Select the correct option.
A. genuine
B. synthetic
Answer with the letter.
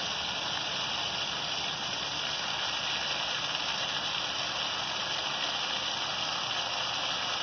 A